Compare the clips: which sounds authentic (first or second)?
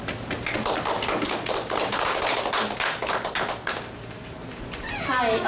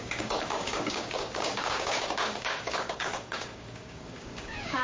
first